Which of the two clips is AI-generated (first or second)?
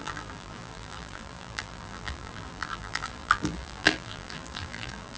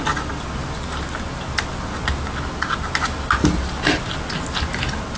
first